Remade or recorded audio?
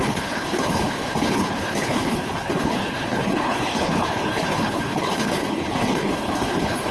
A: remade